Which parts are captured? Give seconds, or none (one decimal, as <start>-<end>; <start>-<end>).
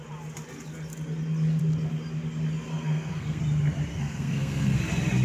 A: 0.0-2.7; 3.4-3.9; 4.8-5.2